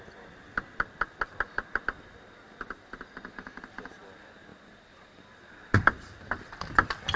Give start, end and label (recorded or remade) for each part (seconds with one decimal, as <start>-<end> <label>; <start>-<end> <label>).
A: 0.0-4.5 recorded; 4.5-6.7 remade; 6.7-7.2 recorded